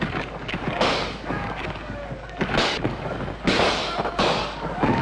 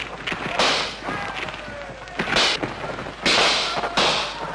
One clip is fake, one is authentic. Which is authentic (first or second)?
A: second